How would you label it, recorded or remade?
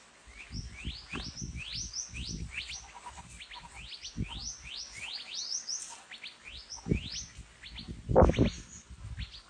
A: recorded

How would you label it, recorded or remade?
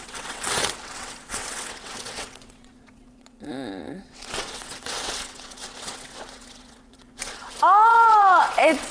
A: remade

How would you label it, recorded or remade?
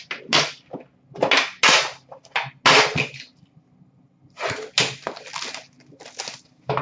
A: recorded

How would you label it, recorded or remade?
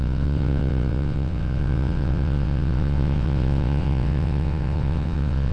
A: remade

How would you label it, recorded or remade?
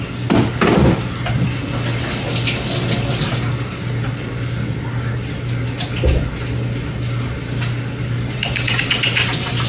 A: recorded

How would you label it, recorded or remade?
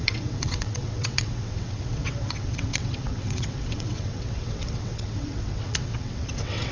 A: remade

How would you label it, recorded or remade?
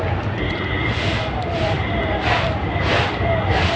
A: recorded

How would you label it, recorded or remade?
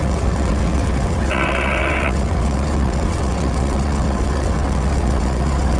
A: remade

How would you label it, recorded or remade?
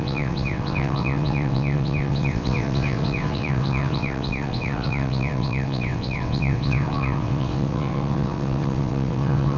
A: remade